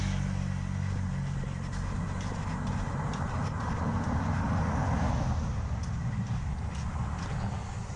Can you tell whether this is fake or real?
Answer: real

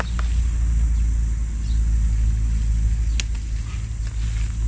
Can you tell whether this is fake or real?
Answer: real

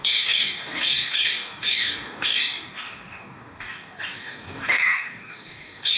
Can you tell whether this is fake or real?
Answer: fake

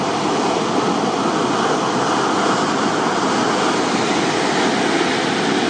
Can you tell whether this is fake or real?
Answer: real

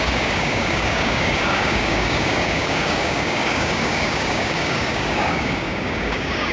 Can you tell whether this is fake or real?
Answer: fake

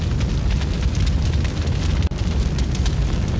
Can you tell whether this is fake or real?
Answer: real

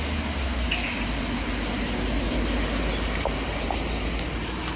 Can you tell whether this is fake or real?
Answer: real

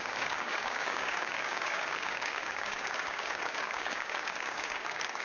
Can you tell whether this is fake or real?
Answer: fake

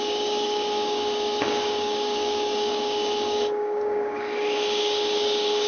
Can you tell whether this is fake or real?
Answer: fake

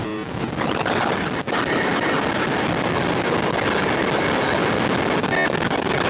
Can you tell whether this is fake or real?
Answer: real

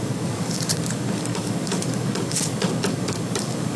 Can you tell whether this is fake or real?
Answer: fake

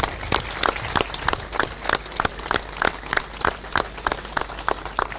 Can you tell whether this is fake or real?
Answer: real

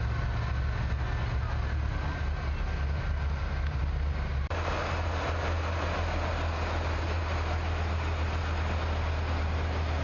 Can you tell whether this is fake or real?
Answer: real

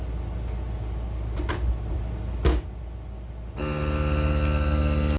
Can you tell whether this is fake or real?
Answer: real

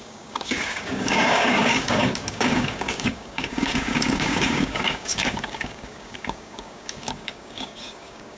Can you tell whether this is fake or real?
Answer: fake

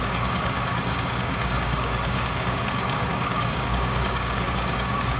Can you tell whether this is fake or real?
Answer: fake